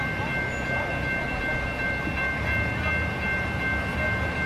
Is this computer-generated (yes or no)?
no